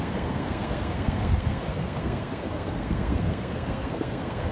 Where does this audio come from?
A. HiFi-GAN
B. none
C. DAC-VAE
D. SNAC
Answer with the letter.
D